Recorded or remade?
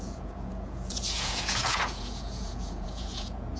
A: remade